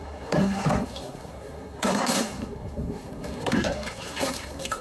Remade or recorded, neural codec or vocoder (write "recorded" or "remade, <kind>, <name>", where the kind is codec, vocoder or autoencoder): remade, codec, SNAC